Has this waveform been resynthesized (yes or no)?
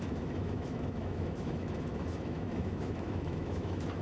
yes